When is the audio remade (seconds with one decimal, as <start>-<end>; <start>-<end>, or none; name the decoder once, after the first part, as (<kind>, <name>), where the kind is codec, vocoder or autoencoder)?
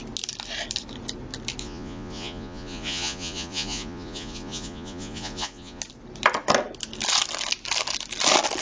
1.6-5.8 (vocoder, Vocos)